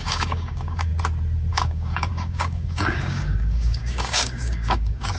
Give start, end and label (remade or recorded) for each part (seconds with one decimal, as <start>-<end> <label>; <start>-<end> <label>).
0.0-0.9 remade; 0.9-1.5 recorded; 1.5-5.2 remade